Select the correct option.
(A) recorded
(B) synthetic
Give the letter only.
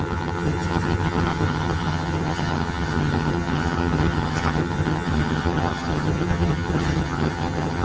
B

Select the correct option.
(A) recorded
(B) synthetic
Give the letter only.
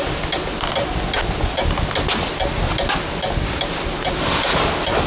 A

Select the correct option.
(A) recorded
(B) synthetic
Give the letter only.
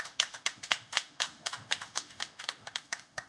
B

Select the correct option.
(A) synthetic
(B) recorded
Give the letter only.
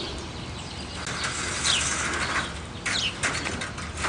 B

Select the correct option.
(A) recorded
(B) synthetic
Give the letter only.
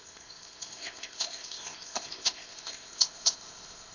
B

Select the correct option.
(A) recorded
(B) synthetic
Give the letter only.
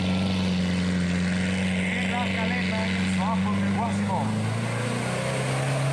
A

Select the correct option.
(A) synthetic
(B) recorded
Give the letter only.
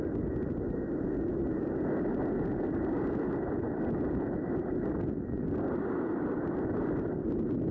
B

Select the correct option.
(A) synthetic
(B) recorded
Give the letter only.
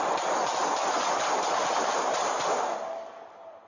B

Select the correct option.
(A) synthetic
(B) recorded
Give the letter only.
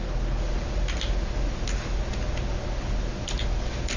B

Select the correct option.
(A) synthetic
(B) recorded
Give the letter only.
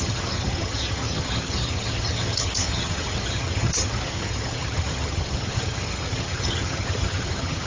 A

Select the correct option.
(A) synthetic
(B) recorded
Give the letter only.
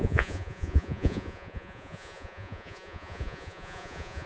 A